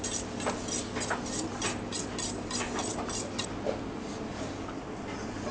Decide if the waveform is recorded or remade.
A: recorded